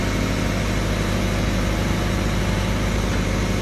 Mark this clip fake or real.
real